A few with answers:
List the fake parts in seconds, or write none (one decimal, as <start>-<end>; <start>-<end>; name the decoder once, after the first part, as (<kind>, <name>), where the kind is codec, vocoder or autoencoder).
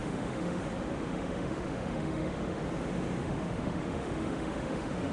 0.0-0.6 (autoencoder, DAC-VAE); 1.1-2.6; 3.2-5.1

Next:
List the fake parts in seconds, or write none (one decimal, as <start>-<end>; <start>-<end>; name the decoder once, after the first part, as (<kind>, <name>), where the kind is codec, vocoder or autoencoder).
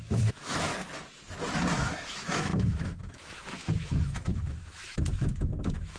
0.0-0.7 (autoencoder, DAC-VAE); 1.7-6.0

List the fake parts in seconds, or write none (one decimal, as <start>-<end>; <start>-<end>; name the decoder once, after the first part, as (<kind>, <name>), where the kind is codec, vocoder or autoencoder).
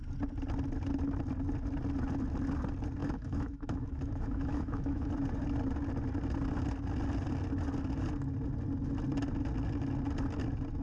3.0-5.1 (autoencoder, DAC-VAE)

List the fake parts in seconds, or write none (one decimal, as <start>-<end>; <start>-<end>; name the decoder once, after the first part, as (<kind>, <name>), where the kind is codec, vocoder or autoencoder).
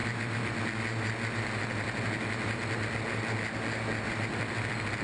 none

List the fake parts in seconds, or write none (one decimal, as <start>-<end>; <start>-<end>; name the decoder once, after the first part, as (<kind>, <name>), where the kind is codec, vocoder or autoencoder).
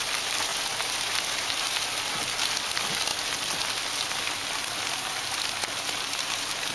none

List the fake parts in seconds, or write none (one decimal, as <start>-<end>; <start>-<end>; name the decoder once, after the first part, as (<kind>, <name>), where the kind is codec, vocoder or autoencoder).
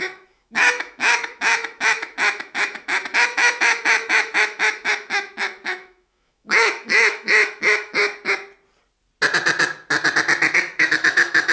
0.0-8.0 (autoencoder, DAC-VAE); 10.5-11.5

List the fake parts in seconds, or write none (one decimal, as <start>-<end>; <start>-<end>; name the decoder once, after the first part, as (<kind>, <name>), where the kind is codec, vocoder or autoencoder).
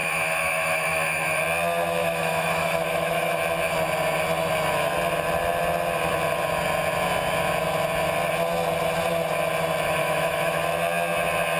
0.0-1.4 (autoencoder, DAC-VAE); 2.0-3.4; 10.0-10.6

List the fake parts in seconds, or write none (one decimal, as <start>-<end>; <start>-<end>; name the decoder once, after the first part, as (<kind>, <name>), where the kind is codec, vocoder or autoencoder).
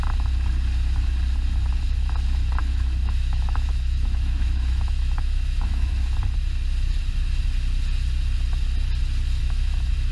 2.6-5.9 (autoencoder, DAC-VAE); 9.4-10.1